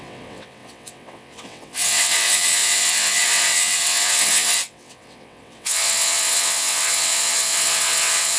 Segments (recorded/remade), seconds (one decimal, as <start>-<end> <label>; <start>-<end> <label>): 0.0-8.4 remade